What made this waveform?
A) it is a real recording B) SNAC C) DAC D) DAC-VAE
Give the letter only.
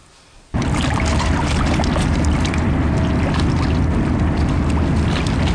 A